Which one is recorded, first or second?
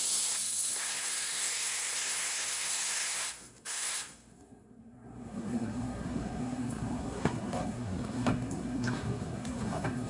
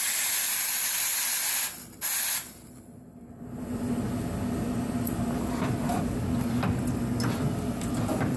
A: second